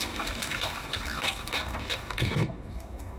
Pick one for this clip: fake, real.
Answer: fake